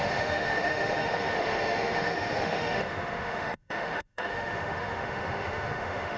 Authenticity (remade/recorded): remade